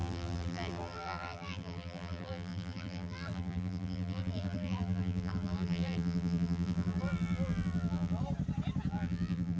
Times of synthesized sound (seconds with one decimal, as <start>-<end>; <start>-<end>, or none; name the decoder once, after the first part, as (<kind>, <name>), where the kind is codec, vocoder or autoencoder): 0.0-8.2 (vocoder, BigVGAN v2); 8.9-9.6